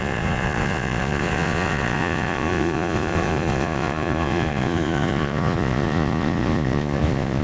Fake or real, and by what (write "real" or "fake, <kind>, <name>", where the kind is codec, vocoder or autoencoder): fake, vocoder, Vocos